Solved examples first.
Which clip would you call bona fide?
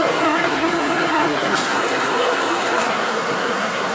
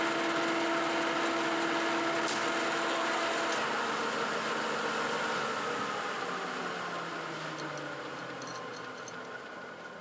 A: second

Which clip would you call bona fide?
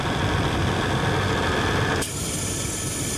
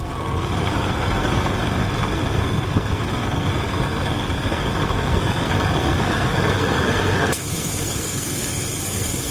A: first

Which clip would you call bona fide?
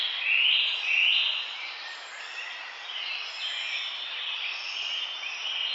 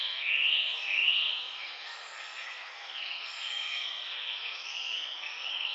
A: first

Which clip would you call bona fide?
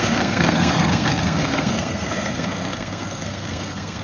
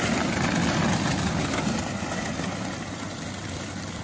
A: second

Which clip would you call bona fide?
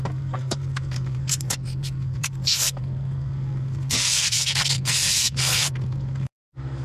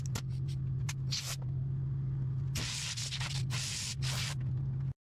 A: second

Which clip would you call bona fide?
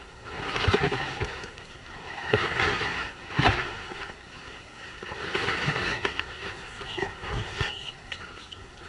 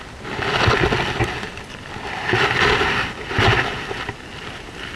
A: second